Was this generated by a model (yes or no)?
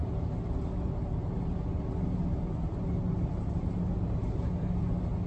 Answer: no